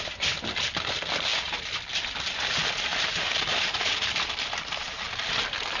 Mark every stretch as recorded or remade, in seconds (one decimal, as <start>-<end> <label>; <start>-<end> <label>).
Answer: 0.0-1.3 recorded; 1.3-1.8 remade; 1.8-2.9 recorded; 2.9-5.1 remade; 5.1-5.8 recorded